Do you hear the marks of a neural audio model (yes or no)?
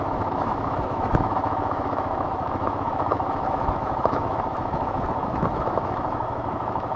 yes